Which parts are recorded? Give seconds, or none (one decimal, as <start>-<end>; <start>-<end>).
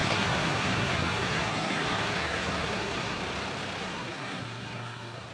3.2-3.8